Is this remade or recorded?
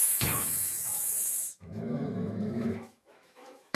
remade